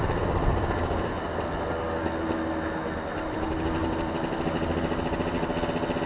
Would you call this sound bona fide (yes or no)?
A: yes